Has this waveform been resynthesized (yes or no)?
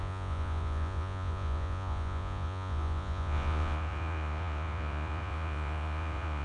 yes